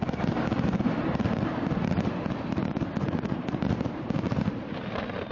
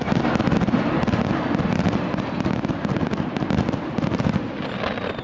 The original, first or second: second